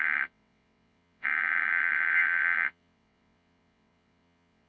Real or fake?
fake